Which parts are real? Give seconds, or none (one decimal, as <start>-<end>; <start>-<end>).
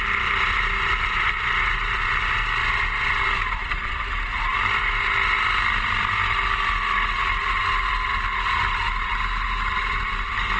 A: none